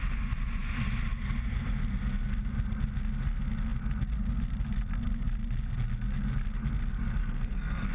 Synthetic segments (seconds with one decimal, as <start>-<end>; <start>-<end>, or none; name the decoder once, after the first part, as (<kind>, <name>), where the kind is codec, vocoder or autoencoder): 7.2-7.9 (codec, SNAC)